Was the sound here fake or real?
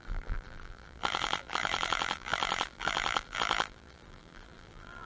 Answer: fake